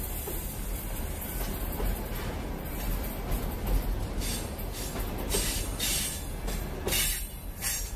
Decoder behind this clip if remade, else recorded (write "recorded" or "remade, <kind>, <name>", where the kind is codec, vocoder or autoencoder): recorded